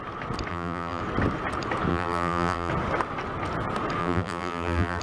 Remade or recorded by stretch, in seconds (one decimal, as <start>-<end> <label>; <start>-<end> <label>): 0.0-0.5 recorded; 0.5-1.0 remade; 1.0-1.9 recorded; 1.9-2.7 remade; 2.7-4.0 recorded; 4.0-5.0 remade